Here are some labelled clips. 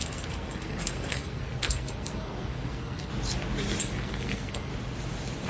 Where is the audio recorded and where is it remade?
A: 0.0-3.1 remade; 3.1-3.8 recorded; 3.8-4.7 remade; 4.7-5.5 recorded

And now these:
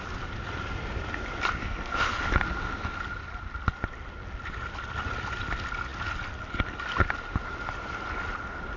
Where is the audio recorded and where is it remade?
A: 0.0-1.6 recorded; 1.6-2.2 remade; 2.2-8.8 recorded

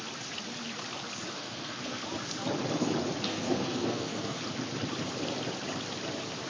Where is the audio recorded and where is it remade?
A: 0.0-1.3 recorded; 1.3-2.0 remade; 2.0-3.3 recorded; 3.3-4.4 remade; 4.4-6.5 recorded

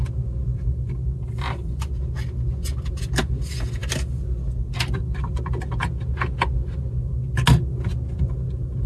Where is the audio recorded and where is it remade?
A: 0.0-8.9 recorded